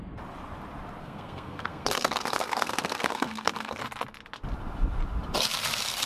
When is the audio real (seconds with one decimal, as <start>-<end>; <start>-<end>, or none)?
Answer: 0.0-1.0; 3.8-6.1